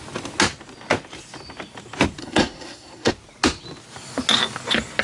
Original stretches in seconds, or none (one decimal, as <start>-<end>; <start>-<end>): 0.0-2.2; 3.1-5.0